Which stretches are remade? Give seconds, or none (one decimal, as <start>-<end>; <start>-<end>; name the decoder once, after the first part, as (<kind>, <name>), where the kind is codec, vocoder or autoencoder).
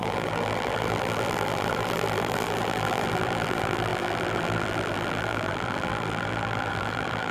0.0-7.3 (vocoder, BigVGAN v2)